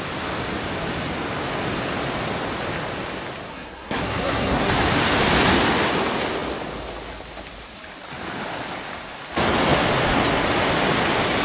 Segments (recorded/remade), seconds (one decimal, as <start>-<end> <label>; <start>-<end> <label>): 0.0-3.5 recorded; 3.5-4.7 remade; 4.7-11.4 recorded

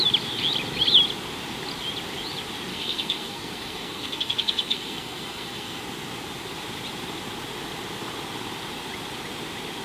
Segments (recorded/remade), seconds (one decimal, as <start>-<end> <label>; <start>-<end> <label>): 0.0-2.7 recorded; 2.7-5.8 remade; 5.8-9.8 recorded

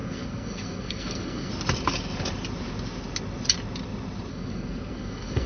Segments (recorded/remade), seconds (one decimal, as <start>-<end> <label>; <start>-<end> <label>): 0.0-1.5 remade; 1.5-4.3 recorded; 4.3-5.5 remade